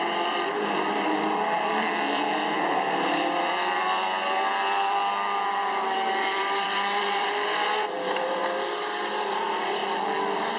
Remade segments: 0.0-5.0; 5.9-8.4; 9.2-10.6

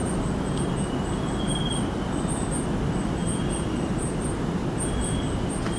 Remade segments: none

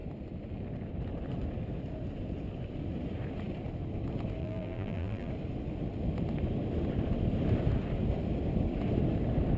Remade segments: 4.4-5.3